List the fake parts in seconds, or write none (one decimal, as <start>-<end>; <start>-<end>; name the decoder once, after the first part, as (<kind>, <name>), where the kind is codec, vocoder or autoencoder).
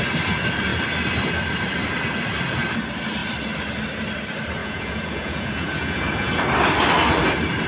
4.6-6.4 (vocoder, Vocos)